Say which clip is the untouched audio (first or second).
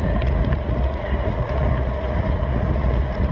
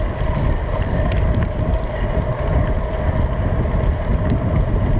second